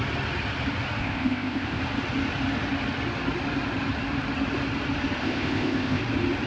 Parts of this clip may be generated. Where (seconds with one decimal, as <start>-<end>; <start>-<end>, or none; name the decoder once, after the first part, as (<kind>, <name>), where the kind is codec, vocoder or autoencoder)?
1.0-1.8 (codec, ZipCodec); 5.2-6.0